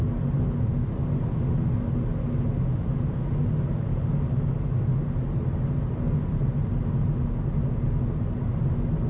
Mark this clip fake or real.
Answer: real